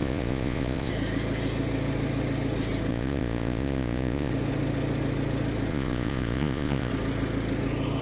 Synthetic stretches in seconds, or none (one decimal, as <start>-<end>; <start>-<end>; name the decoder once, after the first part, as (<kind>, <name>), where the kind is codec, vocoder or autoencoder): 0.0-0.9 (vocoder, Vocos); 2.9-4.3; 5.7-6.9